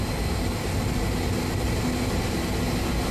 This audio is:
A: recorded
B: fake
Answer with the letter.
A